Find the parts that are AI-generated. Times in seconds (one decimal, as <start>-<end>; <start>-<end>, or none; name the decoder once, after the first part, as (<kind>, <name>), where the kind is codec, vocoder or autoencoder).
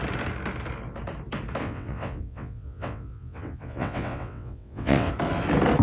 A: 1.6-5.1 (vocoder, WaveNeXt)